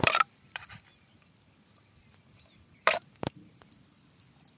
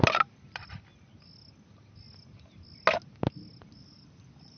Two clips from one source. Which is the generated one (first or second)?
first